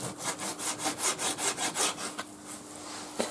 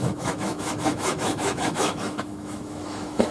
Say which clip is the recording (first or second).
first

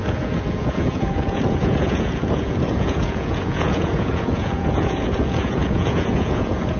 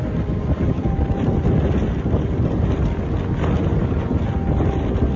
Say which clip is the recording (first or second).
second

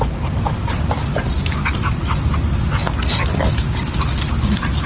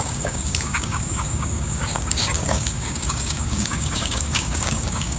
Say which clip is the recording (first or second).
first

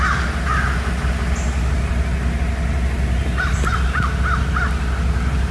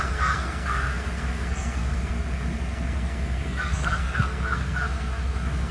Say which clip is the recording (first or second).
first